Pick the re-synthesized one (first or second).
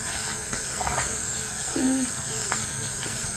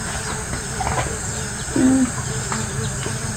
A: first